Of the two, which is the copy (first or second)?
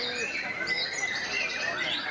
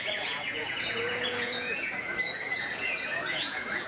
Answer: second